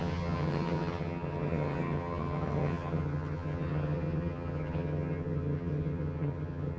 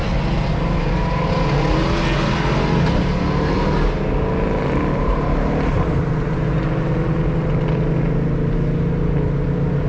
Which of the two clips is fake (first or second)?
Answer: first